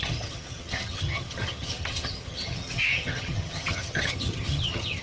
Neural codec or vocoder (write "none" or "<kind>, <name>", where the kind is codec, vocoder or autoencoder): vocoder, HiFi-GAN